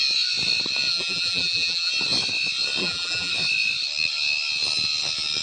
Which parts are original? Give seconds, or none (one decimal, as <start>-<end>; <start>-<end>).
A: 0.0-0.9; 1.9-2.8; 3.3-5.4